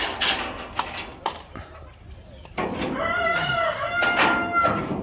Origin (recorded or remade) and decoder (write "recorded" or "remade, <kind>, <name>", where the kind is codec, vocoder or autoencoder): recorded